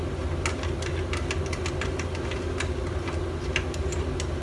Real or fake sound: real